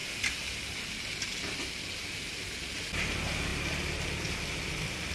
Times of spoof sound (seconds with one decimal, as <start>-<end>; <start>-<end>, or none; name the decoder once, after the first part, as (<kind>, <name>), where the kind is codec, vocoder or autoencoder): none